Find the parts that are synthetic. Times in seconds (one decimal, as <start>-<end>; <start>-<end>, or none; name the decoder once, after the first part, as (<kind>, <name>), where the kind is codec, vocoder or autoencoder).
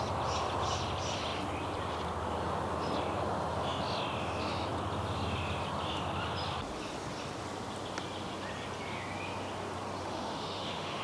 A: 10.0-11.0 (autoencoder, DAC-VAE)